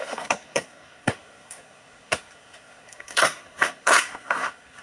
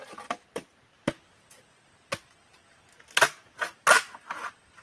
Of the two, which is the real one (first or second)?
second